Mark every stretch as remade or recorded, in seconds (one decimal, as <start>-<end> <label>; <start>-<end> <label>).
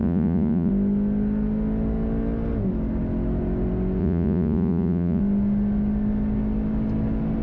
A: 0.0-0.7 remade; 0.7-4.0 recorded; 4.0-5.2 remade; 5.2-7.4 recorded